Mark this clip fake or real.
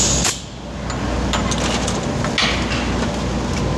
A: real